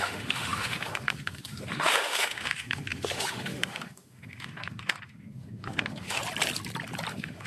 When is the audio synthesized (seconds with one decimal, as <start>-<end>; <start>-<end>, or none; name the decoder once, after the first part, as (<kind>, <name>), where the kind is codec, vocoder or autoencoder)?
0.0-6.2 (autoencoder, DAC-VAE); 7.1-7.5